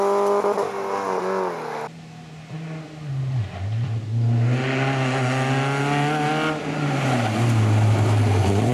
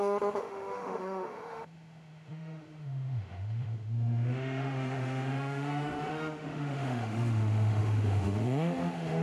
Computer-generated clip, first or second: second